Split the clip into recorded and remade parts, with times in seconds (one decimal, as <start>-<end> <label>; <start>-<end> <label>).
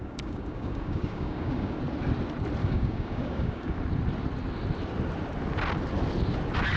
0.0-1.8 remade; 1.8-2.6 recorded; 2.6-3.8 remade; 3.8-6.8 recorded